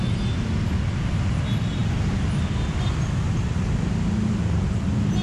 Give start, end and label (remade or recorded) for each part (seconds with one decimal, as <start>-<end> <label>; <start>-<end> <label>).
0.0-5.2 recorded